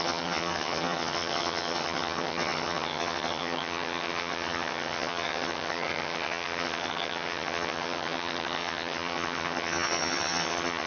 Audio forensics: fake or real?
fake